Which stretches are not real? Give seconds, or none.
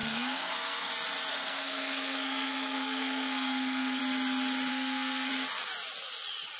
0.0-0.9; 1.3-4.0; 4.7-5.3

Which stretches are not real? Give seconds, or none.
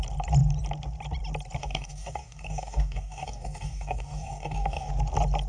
1.6-4.9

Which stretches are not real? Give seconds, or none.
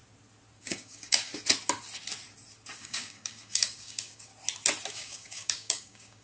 0.6-1.3; 2.8-4.3; 4.9-6.2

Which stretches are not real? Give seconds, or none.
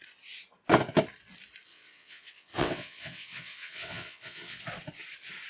1.7-4.6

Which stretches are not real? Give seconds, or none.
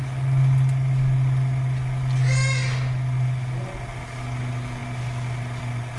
none